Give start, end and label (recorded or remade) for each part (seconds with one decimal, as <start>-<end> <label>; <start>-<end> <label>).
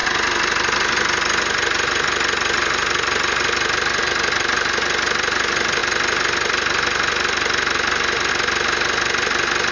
0.0-9.7 recorded